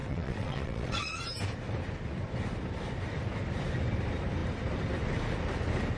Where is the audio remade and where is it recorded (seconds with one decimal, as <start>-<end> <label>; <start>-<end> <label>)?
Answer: 0.0-1.2 remade; 1.2-6.0 recorded